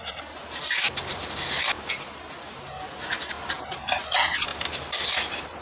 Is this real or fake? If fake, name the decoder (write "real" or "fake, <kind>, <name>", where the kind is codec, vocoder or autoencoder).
real